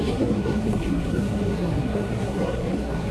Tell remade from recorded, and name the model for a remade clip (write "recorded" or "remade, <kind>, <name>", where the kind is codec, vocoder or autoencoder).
remade, codec, SNAC